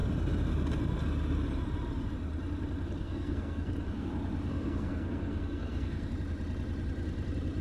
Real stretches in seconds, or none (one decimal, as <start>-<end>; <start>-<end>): 0.0-3.0; 4.1-4.5; 6.1-7.6